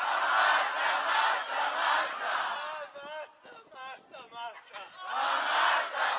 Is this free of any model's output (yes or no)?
yes